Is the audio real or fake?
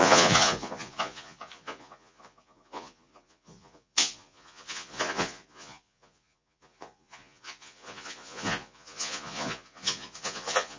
fake